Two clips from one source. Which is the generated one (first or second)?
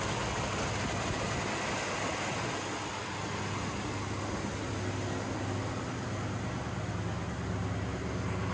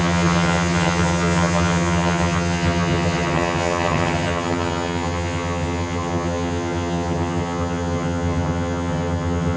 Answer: second